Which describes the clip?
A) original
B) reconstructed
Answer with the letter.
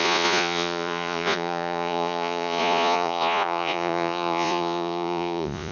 B